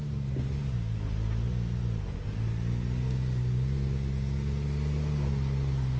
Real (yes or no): yes